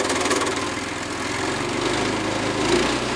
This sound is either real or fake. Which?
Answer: real